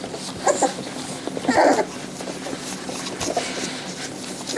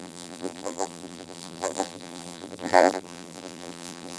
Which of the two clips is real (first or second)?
first